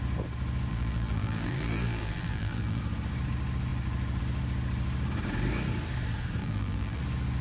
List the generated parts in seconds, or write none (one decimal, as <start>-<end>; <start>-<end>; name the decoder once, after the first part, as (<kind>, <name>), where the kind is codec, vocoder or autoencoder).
0.7-2.8 (vocoder, BigVGAN v2); 6.4-7.0